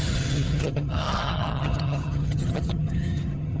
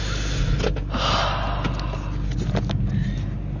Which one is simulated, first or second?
first